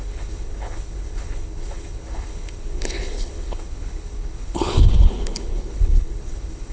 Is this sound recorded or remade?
remade